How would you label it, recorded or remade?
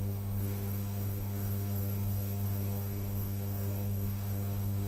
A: remade